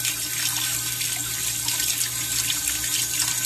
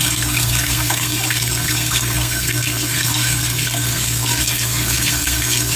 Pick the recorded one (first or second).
first